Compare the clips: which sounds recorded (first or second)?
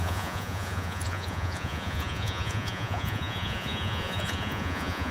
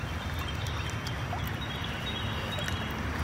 second